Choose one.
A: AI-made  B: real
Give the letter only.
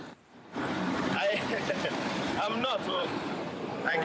A